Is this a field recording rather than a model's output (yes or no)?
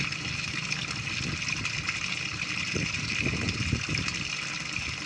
yes